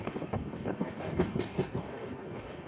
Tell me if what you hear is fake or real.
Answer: fake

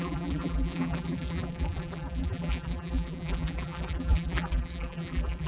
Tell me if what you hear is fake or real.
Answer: fake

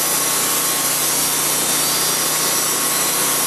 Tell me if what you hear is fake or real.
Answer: real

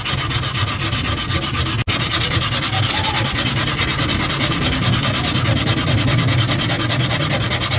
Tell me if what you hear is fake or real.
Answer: real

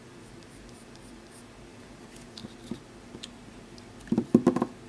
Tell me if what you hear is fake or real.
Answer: real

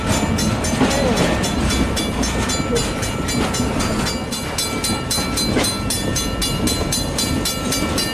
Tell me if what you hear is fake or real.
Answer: real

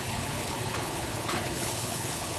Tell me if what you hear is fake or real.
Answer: fake